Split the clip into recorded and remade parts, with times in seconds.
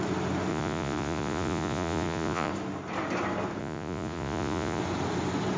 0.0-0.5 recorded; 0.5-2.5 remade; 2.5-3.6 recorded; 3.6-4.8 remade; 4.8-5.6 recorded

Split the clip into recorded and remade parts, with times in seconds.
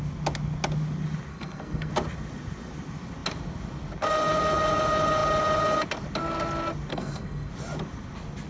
0.0-1.3 recorded; 1.3-1.9 remade; 1.9-6.9 recorded; 6.9-7.5 remade; 7.5-8.5 recorded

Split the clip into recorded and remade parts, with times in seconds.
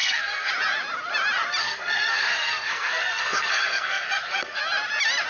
0.0-0.5 remade; 0.5-1.6 recorded; 1.6-4.6 remade; 4.6-5.3 recorded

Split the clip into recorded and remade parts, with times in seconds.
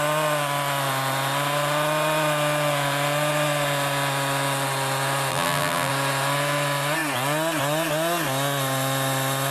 0.0-5.3 recorded; 5.3-5.9 remade; 5.9-9.5 recorded